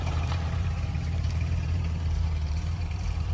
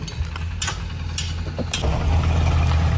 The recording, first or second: second